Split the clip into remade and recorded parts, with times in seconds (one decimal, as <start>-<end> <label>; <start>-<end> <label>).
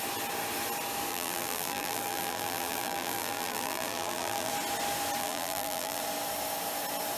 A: 0.0-1.1 recorded; 1.1-4.5 remade; 4.5-5.2 recorded; 5.2-6.0 remade; 6.0-7.2 recorded